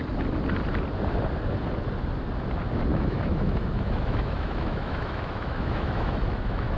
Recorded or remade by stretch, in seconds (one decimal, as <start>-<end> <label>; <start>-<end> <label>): 0.0-2.9 recorded; 2.9-6.8 remade